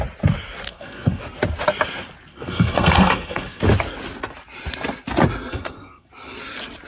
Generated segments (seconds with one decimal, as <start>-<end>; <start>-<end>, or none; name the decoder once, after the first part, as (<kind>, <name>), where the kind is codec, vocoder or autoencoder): 0.7-1.2 (codec, SNAC); 2.3-3.6; 5.5-6.1